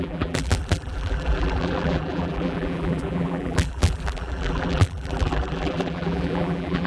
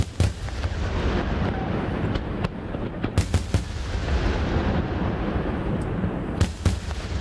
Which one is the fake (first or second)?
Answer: first